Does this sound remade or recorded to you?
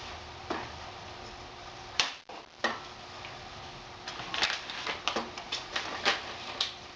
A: remade